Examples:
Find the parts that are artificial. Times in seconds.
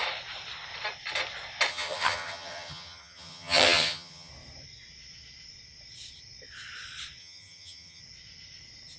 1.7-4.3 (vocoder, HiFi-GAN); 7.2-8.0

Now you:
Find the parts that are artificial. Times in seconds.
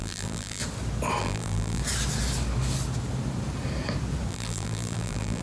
0.0-0.6 (vocoder, BigVGAN v2); 1.2-1.8; 4.3-5.4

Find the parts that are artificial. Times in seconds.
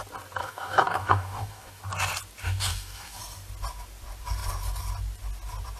0.4-1.8 (codec, DAC); 2.4-3.2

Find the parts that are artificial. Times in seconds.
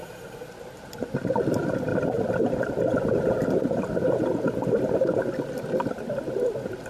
none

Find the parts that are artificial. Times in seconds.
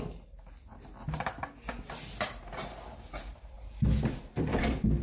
3.3-4.6 (vocoder, BigVGAN v2)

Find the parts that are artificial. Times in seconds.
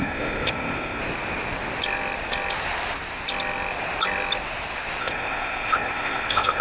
0.0-1.0 (codec, ZipCodec); 5.0-6.6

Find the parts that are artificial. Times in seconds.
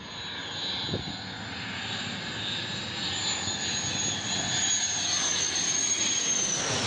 none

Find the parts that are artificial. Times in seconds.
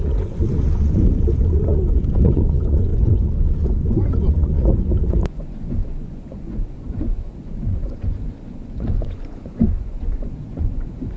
0.0-11.2 (vocoder, Vocos)